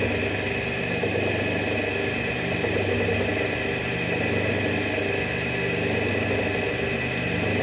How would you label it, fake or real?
real